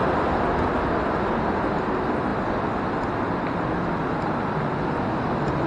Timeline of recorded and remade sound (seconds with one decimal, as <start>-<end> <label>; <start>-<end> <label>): 0.0-5.7 recorded